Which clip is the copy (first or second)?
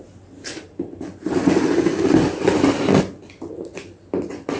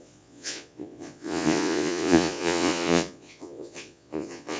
second